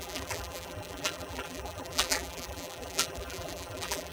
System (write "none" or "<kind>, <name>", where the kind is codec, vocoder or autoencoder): vocoder, BigVGAN v2